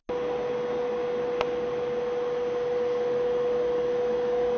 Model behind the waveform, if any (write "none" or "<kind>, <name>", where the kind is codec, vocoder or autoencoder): none